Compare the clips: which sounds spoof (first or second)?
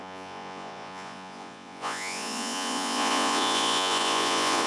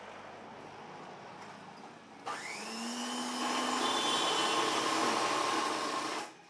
first